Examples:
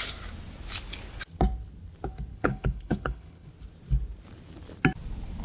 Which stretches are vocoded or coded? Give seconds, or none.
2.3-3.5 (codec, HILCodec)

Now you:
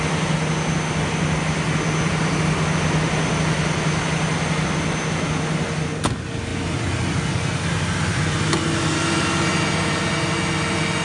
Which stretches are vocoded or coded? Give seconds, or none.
none

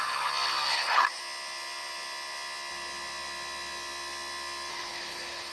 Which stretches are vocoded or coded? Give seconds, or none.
0.7-1.2 (codec, HILCodec); 4.7-5.5

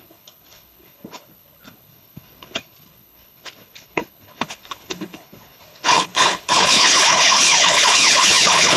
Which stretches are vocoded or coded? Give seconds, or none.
0.0-8.8 (codec, HILCodec)

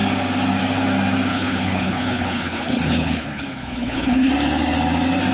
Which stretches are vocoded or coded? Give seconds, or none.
1.3-4.3 (codec, HILCodec)

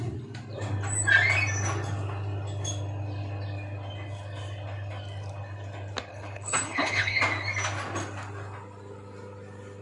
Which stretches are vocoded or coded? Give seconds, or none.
6.1-7.2 (codec, HILCodec)

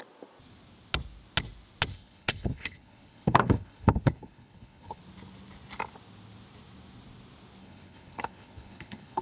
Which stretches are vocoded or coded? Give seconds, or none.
1.9-5.0 (codec, HILCodec); 7.6-9.2